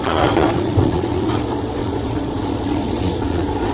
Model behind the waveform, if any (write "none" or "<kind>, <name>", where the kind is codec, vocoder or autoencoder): vocoder, Vocos